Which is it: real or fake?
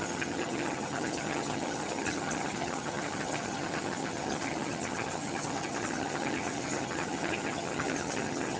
fake